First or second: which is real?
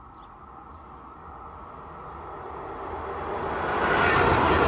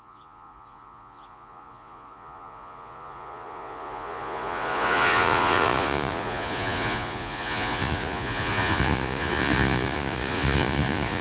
first